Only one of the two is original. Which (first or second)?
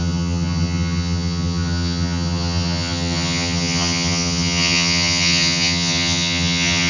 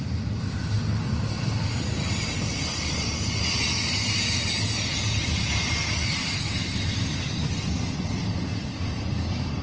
second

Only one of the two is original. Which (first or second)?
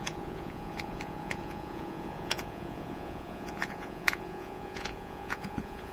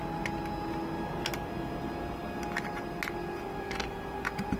second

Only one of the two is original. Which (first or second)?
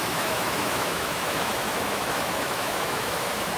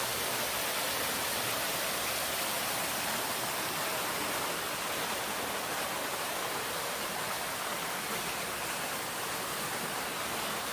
second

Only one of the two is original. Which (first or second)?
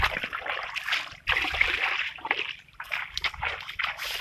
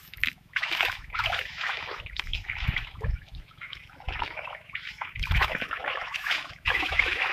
first